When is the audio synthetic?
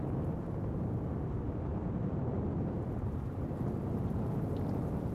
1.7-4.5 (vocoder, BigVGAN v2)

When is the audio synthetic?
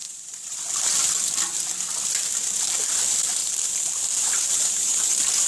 0.0-1.0 (vocoder, BigVGAN v2); 3.4-5.0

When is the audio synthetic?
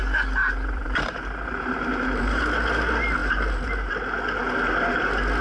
0.4-2.4 (vocoder, BigVGAN v2); 3.2-3.9